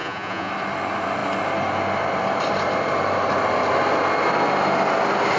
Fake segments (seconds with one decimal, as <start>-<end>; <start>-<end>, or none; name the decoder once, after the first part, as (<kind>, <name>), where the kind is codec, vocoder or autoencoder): 0.0-0.5 (vocoder, Vocos)